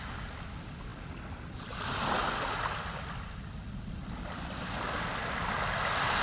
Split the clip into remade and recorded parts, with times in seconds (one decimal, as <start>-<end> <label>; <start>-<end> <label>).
0.0-6.2 recorded